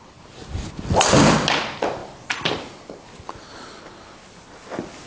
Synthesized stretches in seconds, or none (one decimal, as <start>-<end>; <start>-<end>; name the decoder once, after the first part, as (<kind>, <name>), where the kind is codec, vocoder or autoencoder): none